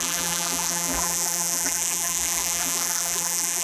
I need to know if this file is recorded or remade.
remade